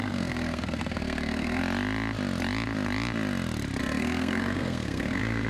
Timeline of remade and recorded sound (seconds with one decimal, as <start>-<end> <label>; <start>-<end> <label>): 0.0-1.6 remade; 1.6-3.8 recorded; 3.8-5.5 remade

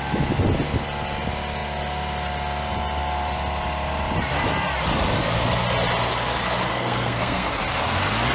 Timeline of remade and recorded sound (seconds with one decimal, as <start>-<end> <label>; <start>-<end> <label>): 0.0-6.7 recorded; 6.7-7.6 remade; 7.6-8.3 recorded

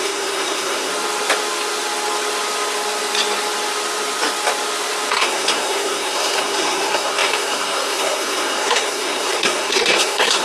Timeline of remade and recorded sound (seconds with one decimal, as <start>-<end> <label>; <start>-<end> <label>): 0.0-0.9 remade; 0.9-5.1 recorded; 5.1-10.4 remade

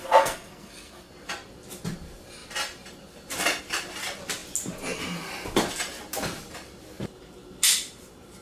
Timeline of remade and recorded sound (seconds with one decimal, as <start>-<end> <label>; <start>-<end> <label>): 0.0-1.1 remade; 1.1-8.4 recorded